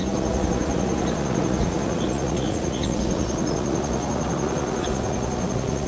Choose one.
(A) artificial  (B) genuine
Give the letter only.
A